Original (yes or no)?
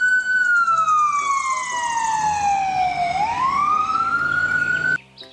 yes